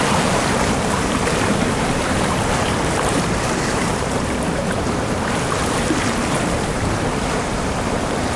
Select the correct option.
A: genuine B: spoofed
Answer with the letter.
B